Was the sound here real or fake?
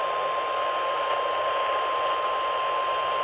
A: real